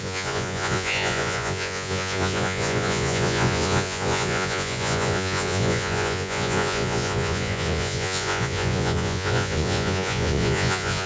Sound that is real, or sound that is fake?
fake